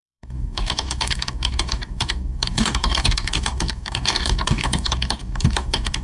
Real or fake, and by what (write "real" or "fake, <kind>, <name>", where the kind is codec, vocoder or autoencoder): fake, codec, DAC